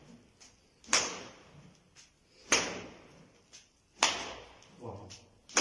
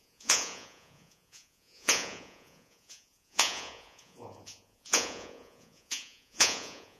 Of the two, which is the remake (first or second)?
second